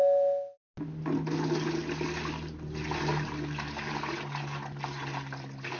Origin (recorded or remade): recorded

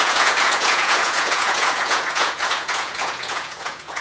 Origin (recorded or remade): remade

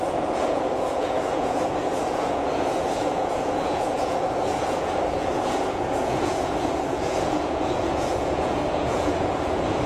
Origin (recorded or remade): remade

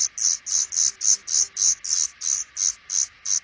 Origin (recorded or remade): recorded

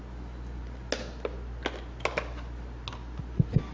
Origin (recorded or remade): recorded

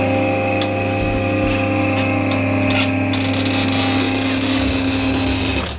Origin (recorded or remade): recorded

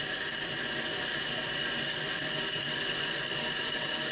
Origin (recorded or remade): recorded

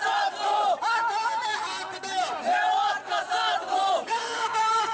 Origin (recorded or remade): remade